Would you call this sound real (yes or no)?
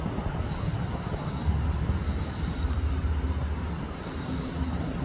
yes